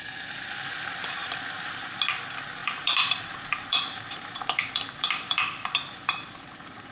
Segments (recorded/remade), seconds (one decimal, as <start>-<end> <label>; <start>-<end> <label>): 0.0-1.2 recorded; 1.2-2.0 remade; 2.0-2.6 recorded; 2.6-6.9 remade